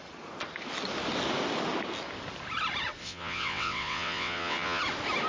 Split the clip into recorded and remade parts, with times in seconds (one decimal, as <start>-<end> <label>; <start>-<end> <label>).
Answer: 0.0-3.0 recorded; 3.0-4.8 remade; 4.8-5.3 recorded